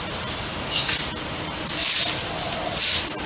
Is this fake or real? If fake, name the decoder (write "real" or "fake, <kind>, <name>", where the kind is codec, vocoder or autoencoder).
real